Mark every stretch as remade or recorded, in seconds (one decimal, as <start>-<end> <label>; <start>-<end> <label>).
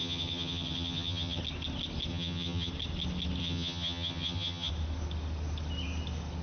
0.0-1.4 remade; 1.4-2.1 recorded; 2.1-2.7 remade; 2.7-3.4 recorded; 3.4-4.7 remade; 4.7-6.4 recorded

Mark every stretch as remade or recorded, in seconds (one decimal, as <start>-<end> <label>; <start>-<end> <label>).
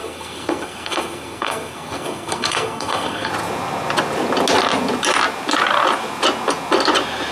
0.0-3.3 remade; 3.3-7.3 recorded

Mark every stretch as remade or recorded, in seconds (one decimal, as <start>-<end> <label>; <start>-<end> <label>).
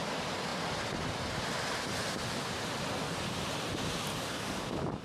0.0-4.1 recorded; 4.1-5.0 remade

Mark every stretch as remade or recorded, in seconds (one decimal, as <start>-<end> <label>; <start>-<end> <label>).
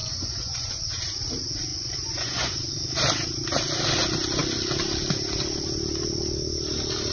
0.0-0.8 remade; 0.8-1.7 recorded; 1.7-2.9 remade; 2.9-7.1 recorded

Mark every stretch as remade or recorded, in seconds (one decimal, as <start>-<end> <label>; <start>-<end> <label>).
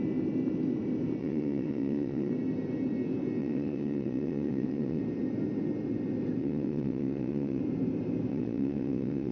0.0-1.2 recorded; 1.2-2.3 remade; 2.3-3.4 recorded; 3.4-5.0 remade; 5.0-6.4 recorded; 6.4-7.6 remade; 7.6-8.3 recorded; 8.3-9.3 remade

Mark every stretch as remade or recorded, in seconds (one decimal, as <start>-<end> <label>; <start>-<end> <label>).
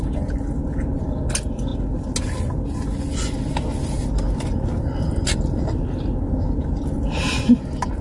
0.0-8.0 recorded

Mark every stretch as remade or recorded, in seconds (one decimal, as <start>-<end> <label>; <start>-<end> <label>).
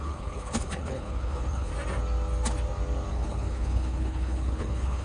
0.0-1.7 remade; 1.7-3.1 recorded; 3.1-5.0 remade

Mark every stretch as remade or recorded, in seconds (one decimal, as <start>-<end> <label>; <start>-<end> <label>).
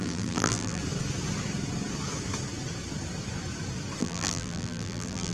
0.0-0.8 remade; 0.8-4.0 recorded; 4.0-5.3 remade